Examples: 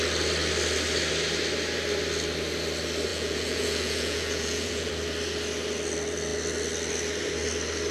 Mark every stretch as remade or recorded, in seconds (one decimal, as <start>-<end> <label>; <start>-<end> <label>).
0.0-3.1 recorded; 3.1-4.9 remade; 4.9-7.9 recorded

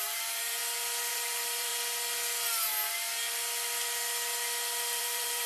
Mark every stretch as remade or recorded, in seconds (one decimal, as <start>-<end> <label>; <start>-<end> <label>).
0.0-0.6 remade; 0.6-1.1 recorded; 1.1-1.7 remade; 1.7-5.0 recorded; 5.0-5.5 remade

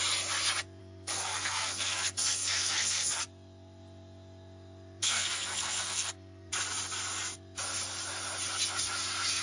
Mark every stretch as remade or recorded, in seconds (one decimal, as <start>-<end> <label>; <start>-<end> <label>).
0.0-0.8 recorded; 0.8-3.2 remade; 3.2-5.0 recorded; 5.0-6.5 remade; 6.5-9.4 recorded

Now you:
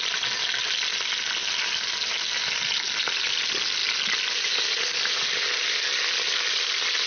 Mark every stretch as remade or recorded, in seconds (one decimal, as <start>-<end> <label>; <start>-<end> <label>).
0.0-7.1 recorded

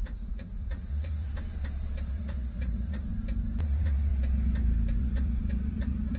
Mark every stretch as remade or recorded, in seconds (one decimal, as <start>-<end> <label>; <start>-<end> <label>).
0.0-1.3 remade; 1.3-2.1 recorded; 2.1-3.1 remade; 3.1-3.6 recorded; 3.6-4.1 remade; 4.1-5.0 recorded; 5.0-6.2 remade

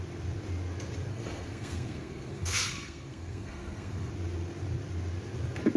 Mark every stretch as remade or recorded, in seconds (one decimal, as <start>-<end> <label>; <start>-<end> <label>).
0.0-1.1 recorded; 1.1-4.1 remade; 4.1-5.8 recorded

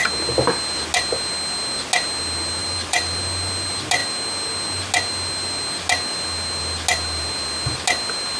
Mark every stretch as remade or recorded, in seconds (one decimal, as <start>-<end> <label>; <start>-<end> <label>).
0.0-2.6 recorded; 2.6-3.2 remade; 3.2-8.4 recorded

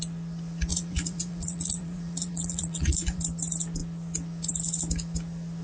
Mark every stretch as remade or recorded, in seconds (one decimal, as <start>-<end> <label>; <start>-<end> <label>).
0.0-0.7 recorded; 0.7-3.2 remade; 3.2-5.6 recorded